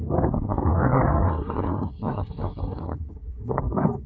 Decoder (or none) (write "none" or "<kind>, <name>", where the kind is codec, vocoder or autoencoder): codec, SNAC